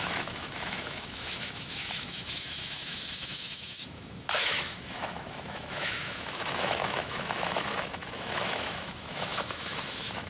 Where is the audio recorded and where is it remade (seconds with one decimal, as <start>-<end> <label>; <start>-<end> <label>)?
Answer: 0.0-10.3 remade